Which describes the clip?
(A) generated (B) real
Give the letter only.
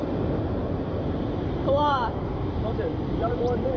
A